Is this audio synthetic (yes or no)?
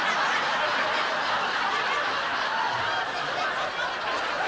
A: no